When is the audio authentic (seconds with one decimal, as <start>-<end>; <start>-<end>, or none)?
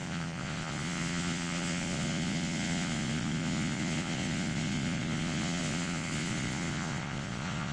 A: none